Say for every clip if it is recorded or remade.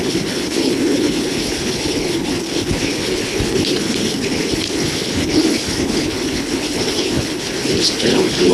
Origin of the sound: remade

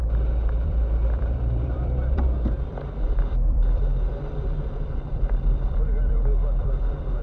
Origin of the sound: remade